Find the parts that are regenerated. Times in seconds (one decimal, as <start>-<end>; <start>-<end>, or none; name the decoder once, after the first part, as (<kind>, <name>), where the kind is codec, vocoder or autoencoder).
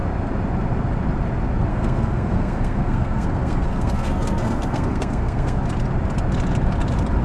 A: 1.7-5.6 (codec, SNAC)